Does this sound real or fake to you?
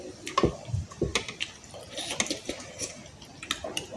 real